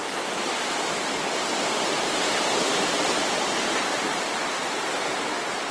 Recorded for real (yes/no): no